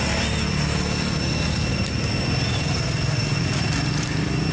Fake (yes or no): no